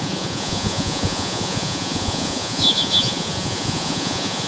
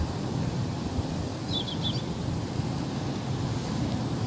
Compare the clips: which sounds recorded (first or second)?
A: second